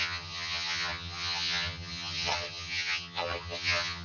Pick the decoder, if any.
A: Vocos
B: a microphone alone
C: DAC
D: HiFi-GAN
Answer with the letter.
D